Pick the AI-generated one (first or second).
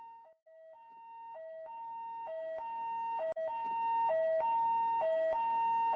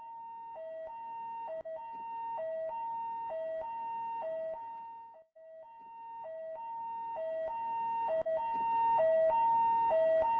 first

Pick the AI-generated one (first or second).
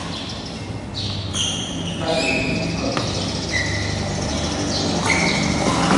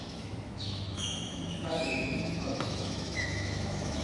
second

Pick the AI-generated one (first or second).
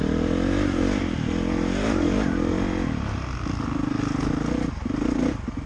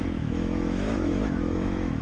second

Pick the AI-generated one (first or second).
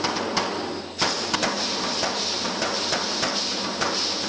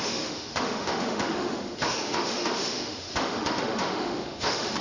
second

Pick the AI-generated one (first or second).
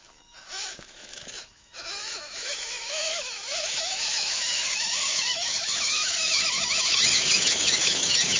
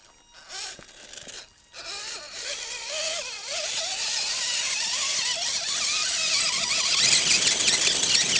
first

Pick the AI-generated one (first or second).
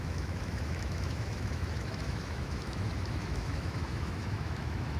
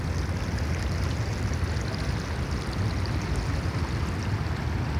first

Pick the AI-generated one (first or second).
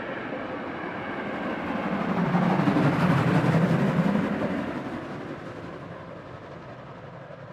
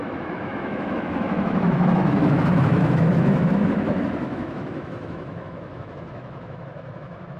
second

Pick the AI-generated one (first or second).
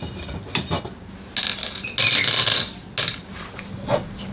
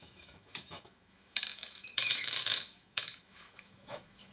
second